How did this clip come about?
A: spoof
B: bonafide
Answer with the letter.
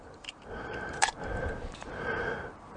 A